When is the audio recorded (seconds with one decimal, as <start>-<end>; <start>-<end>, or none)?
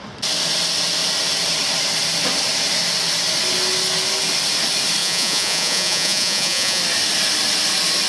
0.0-5.0; 6.8-8.1